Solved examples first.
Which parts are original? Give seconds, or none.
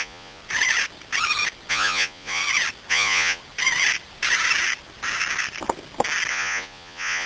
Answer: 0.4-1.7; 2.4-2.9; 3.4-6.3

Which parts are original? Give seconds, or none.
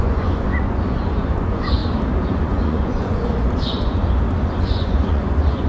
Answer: 1.8-2.3; 4.0-4.6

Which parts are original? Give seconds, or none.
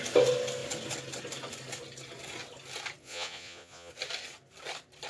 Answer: 0.0-3.0; 3.9-5.1